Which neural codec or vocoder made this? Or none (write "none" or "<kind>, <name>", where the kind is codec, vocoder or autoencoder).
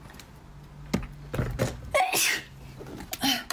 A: none